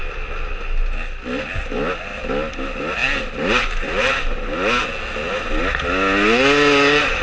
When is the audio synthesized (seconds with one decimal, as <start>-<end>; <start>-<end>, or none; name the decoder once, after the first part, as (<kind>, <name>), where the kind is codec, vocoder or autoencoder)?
none